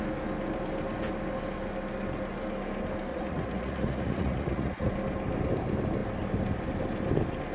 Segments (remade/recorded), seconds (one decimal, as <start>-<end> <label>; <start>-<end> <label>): 0.0-3.1 recorded; 3.1-4.9 remade; 4.9-7.5 recorded